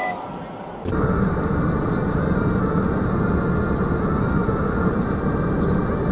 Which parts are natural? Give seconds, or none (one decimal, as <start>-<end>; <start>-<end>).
0.0-6.1